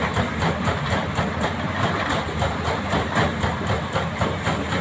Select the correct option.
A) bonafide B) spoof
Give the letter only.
B